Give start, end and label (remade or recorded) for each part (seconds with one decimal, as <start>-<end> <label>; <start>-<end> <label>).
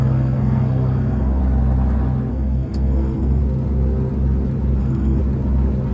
0.0-1.4 remade; 1.4-2.3 recorded; 2.3-3.4 remade; 3.4-4.8 recorded; 4.8-5.2 remade; 5.2-5.9 recorded